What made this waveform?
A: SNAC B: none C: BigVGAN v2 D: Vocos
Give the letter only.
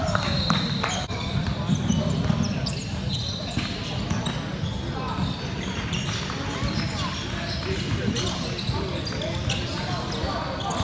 B